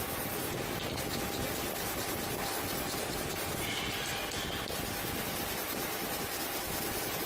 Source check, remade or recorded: recorded